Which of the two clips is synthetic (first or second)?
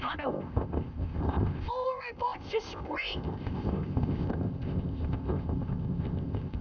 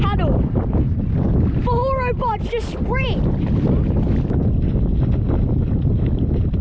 first